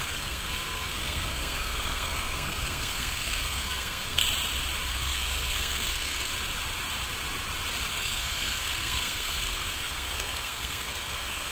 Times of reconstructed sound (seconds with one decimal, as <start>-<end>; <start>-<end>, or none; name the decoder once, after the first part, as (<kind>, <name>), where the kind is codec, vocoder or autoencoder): 0.0-4.2 (codec, SNAC); 4.9-6.3; 7.9-11.5